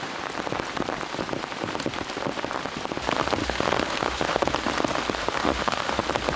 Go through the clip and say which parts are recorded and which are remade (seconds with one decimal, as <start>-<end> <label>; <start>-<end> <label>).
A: 0.0-3.4 recorded; 3.4-4.4 remade; 4.4-5.2 recorded; 5.2-6.0 remade; 6.0-6.4 recorded